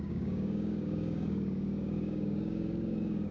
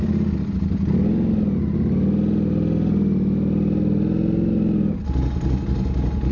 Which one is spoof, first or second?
first